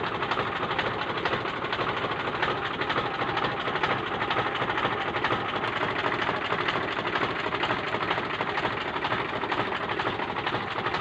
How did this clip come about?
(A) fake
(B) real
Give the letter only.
B